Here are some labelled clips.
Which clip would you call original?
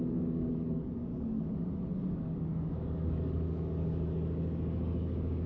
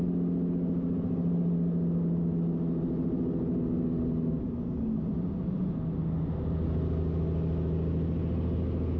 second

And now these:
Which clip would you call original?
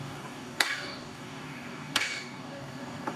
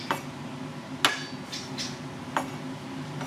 second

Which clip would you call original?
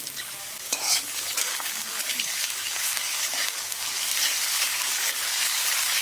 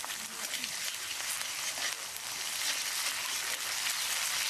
second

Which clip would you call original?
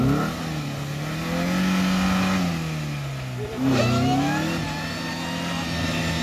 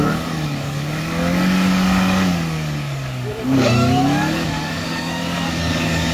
first